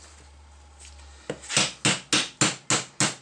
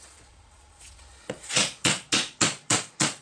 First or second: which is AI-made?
second